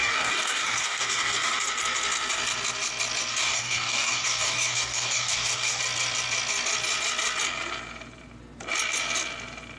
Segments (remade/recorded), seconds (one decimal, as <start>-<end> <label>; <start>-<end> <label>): 0.0-1.6 remade; 1.6-3.3 recorded; 3.3-5.8 remade; 5.8-9.8 recorded